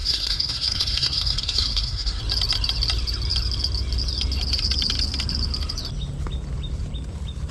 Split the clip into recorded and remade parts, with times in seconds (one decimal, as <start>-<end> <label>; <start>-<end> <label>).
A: 0.0-2.2 remade; 2.2-7.5 recorded